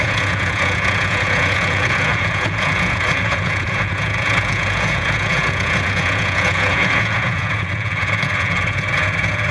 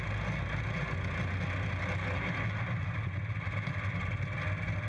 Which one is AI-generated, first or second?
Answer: first